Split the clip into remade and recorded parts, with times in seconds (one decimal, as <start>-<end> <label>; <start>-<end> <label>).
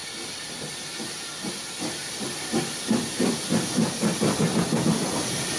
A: 0.0-2.0 recorded; 2.0-5.6 remade